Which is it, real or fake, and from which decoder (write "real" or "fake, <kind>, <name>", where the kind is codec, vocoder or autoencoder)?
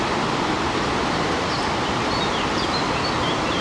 real